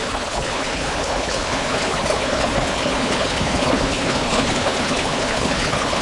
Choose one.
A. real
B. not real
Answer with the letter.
B